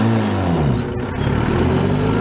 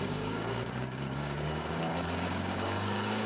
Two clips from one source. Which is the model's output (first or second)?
second